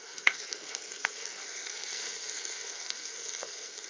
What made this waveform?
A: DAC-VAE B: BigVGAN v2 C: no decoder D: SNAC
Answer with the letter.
D